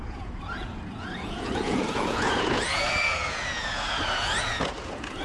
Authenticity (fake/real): fake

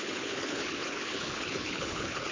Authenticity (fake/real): fake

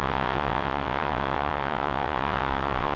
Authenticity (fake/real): fake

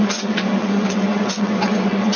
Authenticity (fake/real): fake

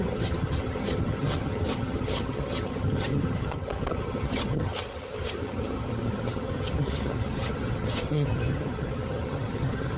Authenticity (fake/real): fake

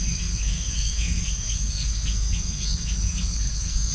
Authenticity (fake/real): fake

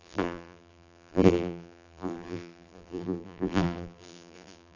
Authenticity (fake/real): fake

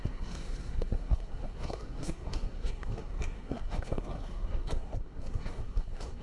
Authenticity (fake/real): fake